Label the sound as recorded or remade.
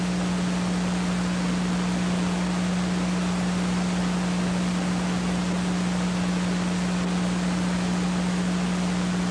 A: recorded